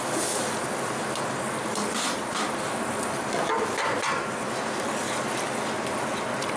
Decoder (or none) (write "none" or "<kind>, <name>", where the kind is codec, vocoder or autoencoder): none